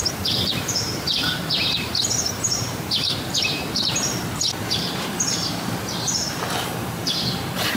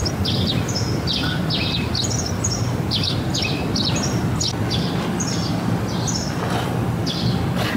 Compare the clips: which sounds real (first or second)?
second